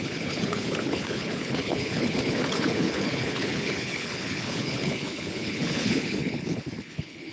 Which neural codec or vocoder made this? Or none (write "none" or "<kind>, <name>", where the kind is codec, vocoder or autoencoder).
codec, HILCodec